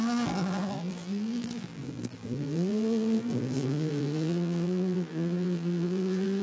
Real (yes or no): no